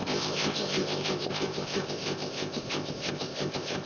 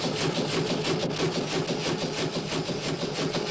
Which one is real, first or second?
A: second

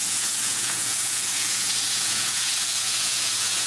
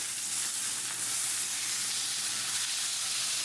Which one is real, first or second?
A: second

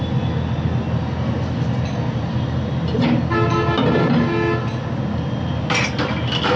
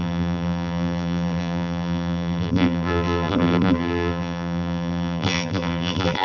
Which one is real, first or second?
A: first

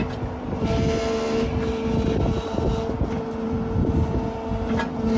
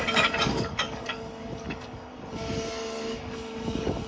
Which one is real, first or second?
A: first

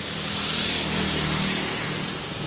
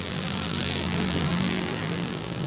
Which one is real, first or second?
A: first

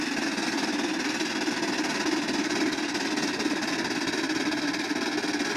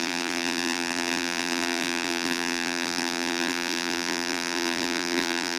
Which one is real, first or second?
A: first